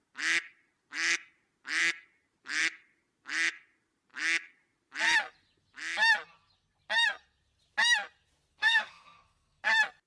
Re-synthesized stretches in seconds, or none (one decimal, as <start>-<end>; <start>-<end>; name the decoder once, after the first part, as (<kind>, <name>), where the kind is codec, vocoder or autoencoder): 8.5-9.6 (codec, SNAC)